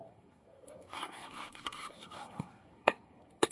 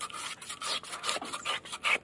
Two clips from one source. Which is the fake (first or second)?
first